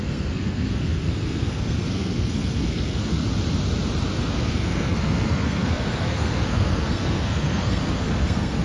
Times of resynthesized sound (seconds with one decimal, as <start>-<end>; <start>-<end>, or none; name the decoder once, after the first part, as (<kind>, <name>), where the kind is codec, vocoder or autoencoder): 0.0-3.1 (codec, SNAC); 4.2-8.6